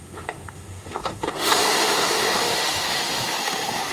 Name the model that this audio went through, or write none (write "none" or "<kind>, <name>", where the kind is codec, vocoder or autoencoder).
autoencoder, DAC-VAE